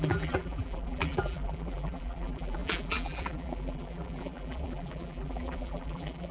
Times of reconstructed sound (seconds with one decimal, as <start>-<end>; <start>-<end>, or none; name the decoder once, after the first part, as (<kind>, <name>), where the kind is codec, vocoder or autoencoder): 0.0-6.3 (vocoder, BigVGAN v2)